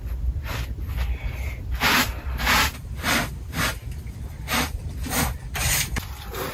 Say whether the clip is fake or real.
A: fake